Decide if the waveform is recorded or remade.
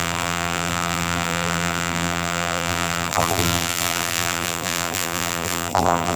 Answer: remade